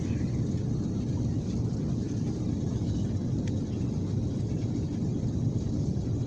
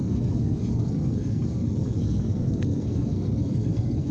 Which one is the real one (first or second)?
first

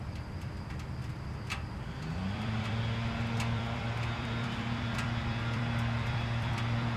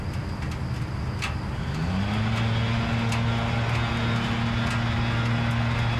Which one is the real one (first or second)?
second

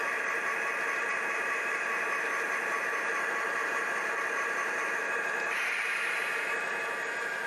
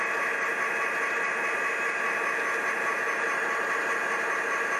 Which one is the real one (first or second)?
second